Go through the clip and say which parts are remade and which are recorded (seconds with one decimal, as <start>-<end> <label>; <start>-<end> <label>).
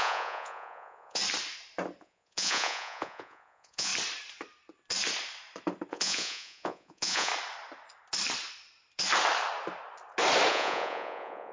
0.0-1.2 remade; 1.2-2.0 recorded; 2.0-3.9 remade; 3.9-5.9 recorded; 5.9-7.3 remade; 7.3-10.5 recorded; 10.5-11.5 remade